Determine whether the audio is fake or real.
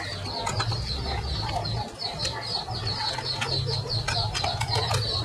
real